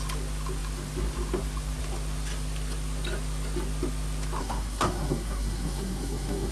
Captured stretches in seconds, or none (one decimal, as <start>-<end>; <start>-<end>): 0.0-4.4

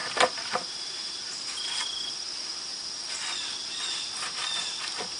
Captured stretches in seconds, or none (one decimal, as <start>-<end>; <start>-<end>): 0.0-3.1

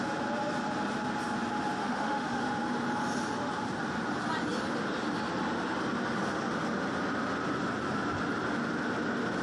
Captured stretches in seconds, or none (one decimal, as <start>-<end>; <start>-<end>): 0.0-1.8; 2.4-9.4

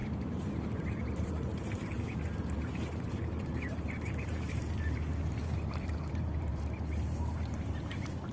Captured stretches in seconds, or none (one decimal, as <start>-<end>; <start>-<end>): none

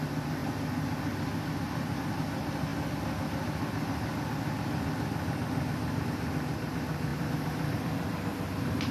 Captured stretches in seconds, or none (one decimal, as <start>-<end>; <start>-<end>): 0.0-7.1

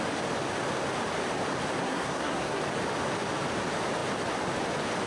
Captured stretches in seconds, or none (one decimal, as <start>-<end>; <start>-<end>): 0.0-1.8; 2.6-5.1